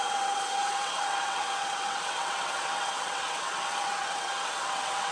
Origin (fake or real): fake